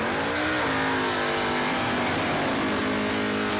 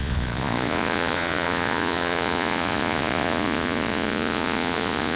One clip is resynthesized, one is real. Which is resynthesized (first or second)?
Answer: second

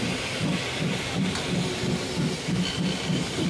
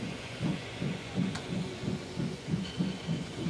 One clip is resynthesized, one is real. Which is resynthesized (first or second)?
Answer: second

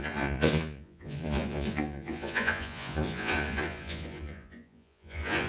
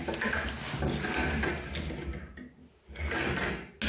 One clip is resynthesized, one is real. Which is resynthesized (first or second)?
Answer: first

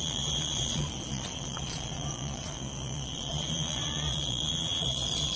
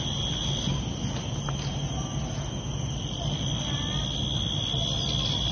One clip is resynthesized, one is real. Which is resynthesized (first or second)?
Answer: first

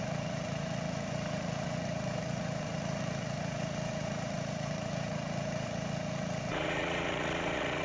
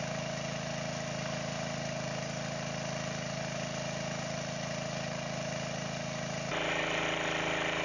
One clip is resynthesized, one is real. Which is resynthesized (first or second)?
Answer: first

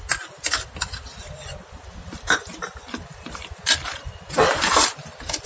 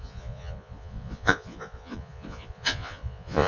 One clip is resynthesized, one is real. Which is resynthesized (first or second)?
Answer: second